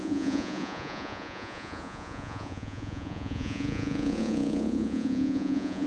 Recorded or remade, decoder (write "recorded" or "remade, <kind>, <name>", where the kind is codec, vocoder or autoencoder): remade, vocoder, Vocos